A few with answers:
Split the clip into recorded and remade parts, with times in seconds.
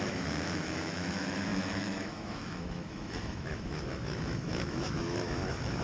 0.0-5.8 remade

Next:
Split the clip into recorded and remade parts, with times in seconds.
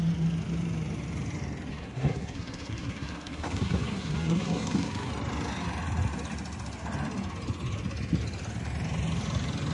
0.0-1.7 recorded; 1.7-5.1 remade; 5.1-9.7 recorded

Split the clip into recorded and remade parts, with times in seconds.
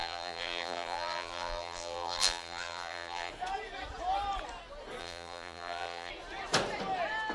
0.0-3.3 remade; 3.3-5.0 recorded; 5.0-6.1 remade; 6.1-7.3 recorded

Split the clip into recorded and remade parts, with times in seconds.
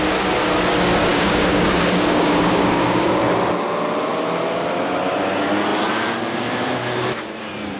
0.0-1.1 recorded; 1.1-3.1 remade; 3.1-7.8 recorded